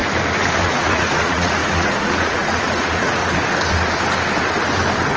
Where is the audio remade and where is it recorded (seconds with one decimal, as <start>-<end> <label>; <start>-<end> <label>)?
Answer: 0.0-0.6 recorded; 0.6-3.2 remade; 3.2-5.2 recorded